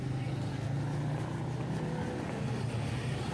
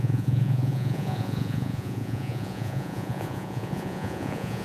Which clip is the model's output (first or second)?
second